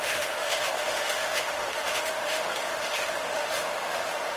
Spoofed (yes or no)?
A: yes